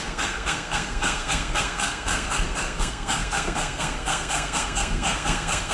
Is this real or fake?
fake